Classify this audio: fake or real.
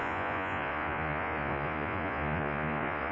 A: fake